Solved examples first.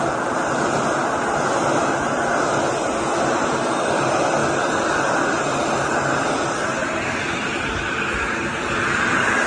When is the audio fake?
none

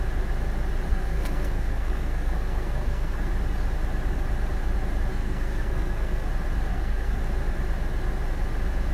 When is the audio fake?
0.9-3.3; 5.1-6.3; 6.7-7.2

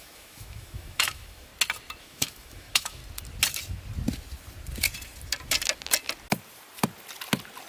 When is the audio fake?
0.0-1.5; 2.0-3.0

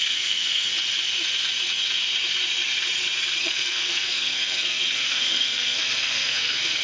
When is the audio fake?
0.0-0.7; 3.4-6.8